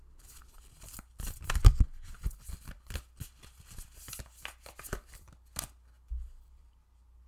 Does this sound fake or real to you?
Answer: real